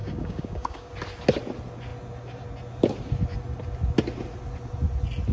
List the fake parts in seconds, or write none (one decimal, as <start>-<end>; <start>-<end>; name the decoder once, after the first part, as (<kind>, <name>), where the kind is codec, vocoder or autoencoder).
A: 0.0-0.9 (codec, DAC)